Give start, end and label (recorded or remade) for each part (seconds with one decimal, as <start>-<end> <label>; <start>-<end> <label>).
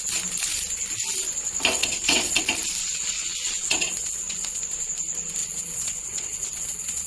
0.0-1.8 recorded; 1.8-2.4 remade; 2.4-2.8 recorded; 2.8-4.6 remade; 4.6-5.4 recorded; 5.4-7.1 remade